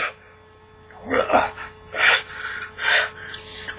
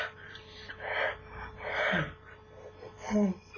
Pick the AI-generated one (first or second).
second